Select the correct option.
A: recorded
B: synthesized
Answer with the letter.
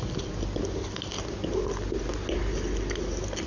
A